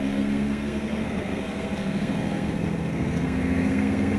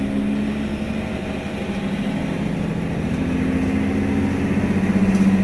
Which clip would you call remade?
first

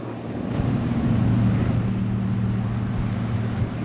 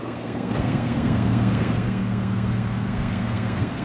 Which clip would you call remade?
second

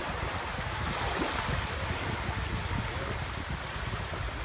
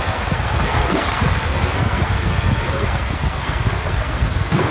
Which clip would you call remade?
second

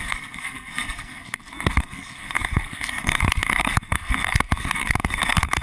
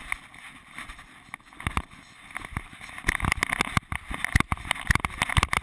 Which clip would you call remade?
first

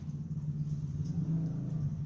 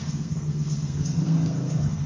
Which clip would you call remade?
second